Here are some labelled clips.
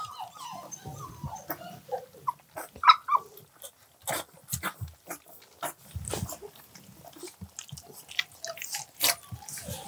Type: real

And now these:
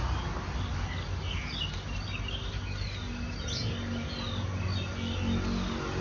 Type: real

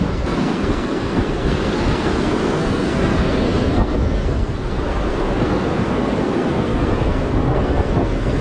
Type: fake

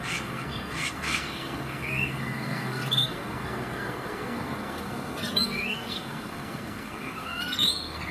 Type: fake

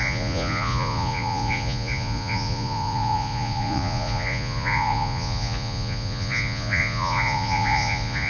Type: fake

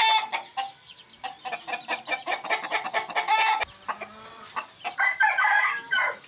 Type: real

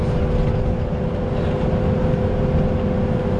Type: real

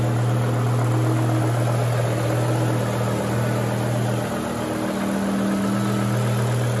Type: real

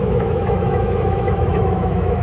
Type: fake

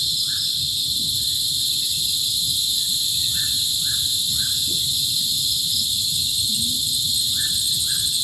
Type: fake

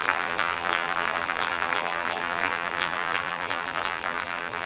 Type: fake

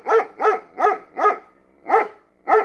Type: fake